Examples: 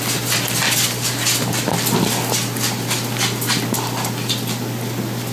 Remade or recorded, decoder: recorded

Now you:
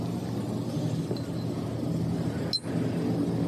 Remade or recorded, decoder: recorded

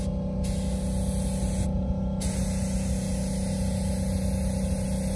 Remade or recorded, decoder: recorded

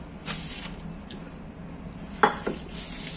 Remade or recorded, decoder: recorded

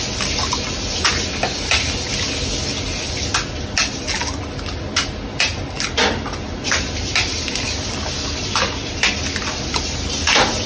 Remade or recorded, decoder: recorded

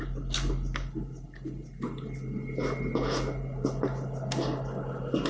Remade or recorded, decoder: recorded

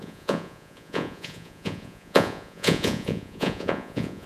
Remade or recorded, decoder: remade, vocoder, Vocos